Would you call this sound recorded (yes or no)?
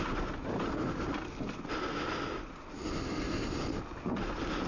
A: yes